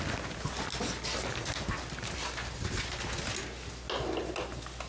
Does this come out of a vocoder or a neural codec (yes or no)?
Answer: no